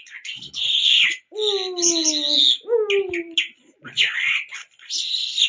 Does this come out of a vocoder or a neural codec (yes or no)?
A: no